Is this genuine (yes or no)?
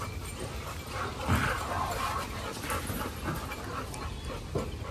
yes